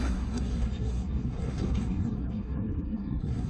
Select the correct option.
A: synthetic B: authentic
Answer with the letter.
A